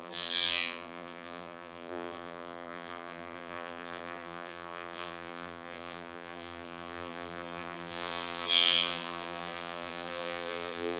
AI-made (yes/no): yes